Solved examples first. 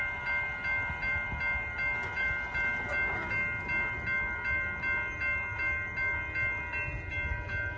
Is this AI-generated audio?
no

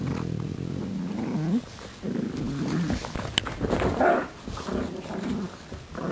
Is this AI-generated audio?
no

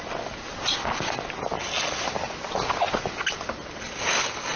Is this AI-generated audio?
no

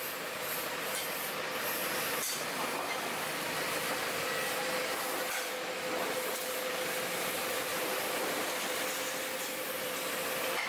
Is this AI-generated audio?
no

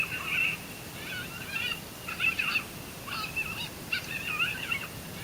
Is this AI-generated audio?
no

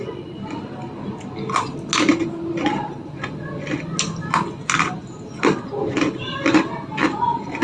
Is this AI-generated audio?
no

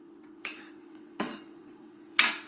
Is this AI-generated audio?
yes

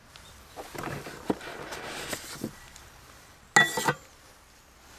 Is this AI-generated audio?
no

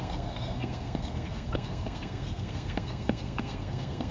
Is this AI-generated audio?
yes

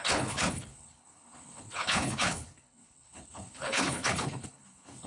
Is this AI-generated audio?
yes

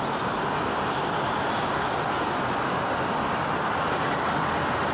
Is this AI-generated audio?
no